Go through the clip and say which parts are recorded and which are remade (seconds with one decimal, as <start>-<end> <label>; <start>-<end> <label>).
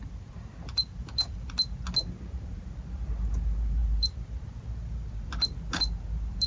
0.0-6.5 recorded